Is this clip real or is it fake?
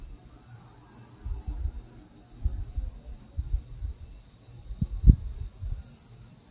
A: real